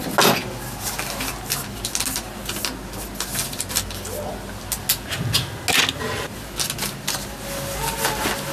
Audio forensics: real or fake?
real